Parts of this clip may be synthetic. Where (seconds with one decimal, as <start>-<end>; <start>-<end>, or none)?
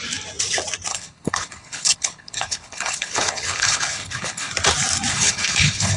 0.9-4.5; 5.1-6.0